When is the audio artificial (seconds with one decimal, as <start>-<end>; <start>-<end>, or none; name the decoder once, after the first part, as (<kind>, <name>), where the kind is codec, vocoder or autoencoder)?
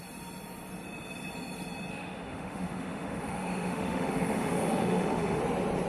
1.9-5.4 (autoencoder, DAC-VAE)